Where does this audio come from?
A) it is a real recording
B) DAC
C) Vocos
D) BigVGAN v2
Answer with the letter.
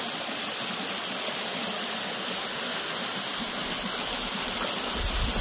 A